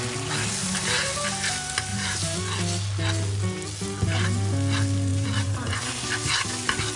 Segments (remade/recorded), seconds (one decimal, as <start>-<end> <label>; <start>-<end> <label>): 0.0-0.6 recorded; 0.6-1.1 remade; 1.1-1.9 recorded; 1.9-2.4 remade; 2.4-5.1 recorded; 5.1-5.8 remade; 5.8-7.0 recorded

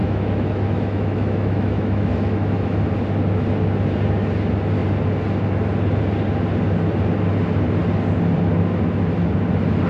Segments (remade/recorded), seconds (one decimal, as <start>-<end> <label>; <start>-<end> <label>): 0.0-2.8 remade; 2.8-9.9 recorded

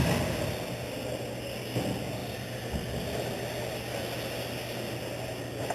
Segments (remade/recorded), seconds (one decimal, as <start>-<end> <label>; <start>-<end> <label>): 0.0-5.7 recorded

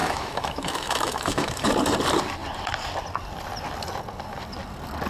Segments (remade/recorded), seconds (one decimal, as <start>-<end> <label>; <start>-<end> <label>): 0.0-1.7 remade; 1.7-5.1 recorded